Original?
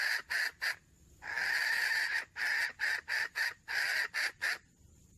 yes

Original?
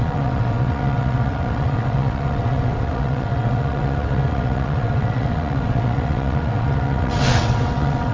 no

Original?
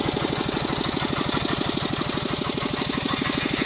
yes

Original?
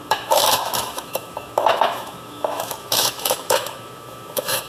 no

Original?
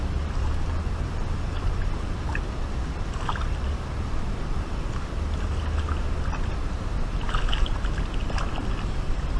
yes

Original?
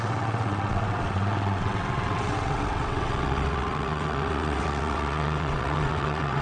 no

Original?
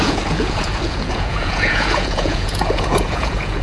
no